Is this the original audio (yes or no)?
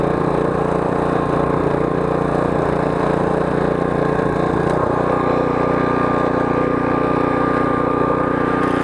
yes